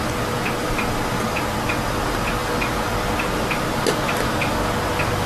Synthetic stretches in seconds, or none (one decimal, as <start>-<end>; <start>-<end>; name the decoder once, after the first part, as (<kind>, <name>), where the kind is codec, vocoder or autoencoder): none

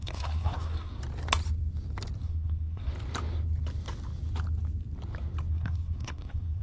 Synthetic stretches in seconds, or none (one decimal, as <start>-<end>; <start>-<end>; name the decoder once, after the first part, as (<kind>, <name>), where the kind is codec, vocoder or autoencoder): 0.0-1.0 (codec, SNAC); 2.2-2.9; 5.5-6.6

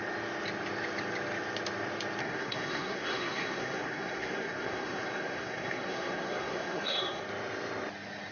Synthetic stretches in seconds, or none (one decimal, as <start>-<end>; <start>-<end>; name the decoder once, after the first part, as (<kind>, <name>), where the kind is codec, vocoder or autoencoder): 2.2-7.2 (codec, SNAC)